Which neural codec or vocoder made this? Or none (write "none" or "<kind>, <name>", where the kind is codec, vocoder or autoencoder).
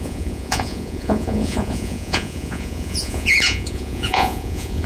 vocoder, Vocos